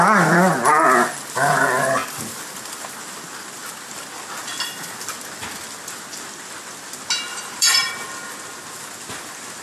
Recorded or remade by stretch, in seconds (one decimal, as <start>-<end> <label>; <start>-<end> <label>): 0.0-7.3 recorded; 7.3-7.9 remade; 7.9-9.6 recorded